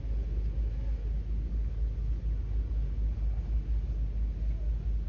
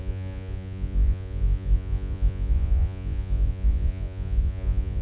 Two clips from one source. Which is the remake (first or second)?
second